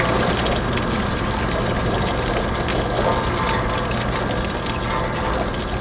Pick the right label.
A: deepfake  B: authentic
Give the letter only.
B